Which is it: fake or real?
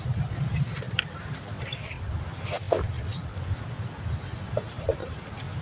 real